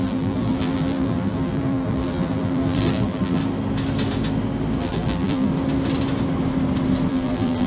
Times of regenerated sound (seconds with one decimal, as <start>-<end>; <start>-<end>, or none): 0.0-3.4; 4.8-5.5; 7.1-7.7